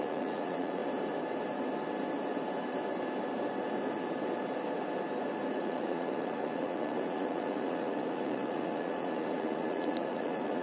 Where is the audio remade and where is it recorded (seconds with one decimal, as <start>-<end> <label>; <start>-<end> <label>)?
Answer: 0.0-0.8 remade; 0.8-5.6 recorded; 5.6-10.6 remade